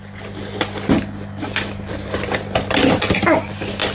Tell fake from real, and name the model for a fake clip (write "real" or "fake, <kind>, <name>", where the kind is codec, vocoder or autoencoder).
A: real